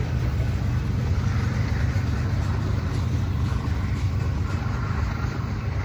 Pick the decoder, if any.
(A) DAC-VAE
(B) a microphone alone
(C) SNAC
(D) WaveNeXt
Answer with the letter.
B